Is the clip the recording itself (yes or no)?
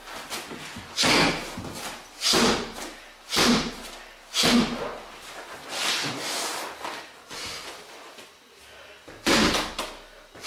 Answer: yes